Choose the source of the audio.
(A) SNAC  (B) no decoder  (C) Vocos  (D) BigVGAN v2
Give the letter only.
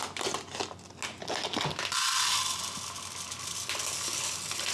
B